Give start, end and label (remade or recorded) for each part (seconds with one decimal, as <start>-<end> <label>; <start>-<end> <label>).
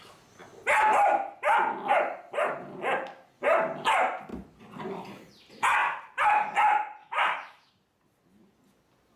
0.0-7.0 recorded; 7.0-7.7 remade; 7.7-9.2 recorded